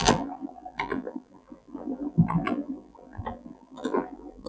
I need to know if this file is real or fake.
fake